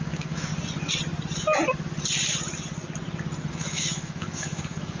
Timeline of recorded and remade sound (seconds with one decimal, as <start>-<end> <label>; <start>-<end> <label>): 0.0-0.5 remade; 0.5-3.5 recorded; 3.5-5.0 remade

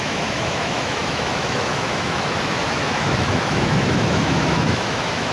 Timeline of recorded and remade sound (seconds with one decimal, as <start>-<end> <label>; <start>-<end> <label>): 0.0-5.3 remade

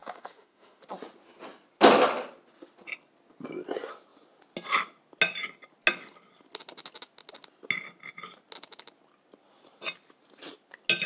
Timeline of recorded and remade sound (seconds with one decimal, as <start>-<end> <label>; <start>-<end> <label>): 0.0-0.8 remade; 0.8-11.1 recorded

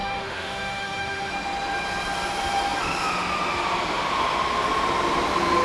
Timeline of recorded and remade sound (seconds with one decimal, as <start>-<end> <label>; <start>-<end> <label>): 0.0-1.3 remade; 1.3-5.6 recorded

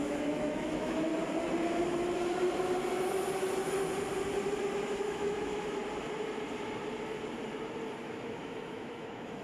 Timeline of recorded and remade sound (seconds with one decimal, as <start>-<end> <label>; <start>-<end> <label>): 0.0-1.1 remade; 1.1-5.0 recorded; 5.0-5.8 remade; 5.8-8.0 recorded; 8.0-9.4 remade

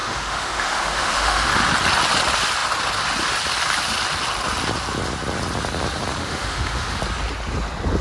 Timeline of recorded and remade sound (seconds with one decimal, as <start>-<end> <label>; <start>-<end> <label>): 0.0-1.5 remade; 1.5-6.2 recorded; 6.2-7.0 remade; 7.0-8.0 recorded

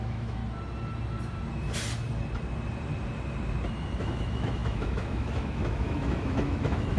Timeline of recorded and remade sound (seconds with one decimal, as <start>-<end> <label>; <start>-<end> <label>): 0.0-0.4 remade; 0.4-4.0 recorded; 4.0-7.0 remade

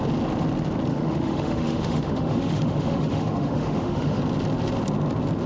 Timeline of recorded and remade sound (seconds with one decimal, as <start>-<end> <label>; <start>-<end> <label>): 0.0-0.9 recorded; 0.9-4.2 remade; 4.2-5.5 recorded